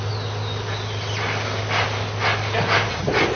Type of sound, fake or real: real